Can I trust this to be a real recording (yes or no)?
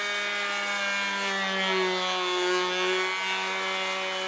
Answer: yes